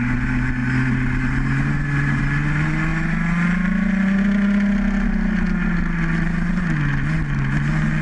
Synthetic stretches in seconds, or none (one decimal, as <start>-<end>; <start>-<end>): none